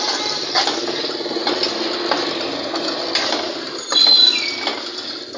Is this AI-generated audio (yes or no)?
no